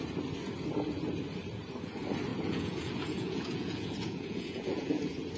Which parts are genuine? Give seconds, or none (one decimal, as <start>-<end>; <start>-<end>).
0.0-2.3; 5.0-5.4